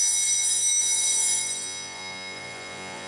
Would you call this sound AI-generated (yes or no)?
yes